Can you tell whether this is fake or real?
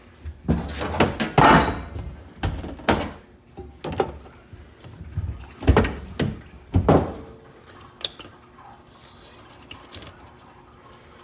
real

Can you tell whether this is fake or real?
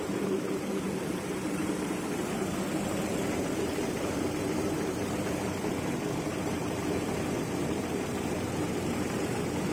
fake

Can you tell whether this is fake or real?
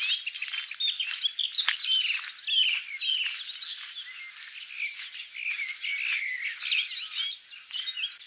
real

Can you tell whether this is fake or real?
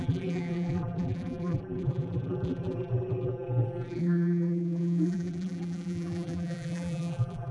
fake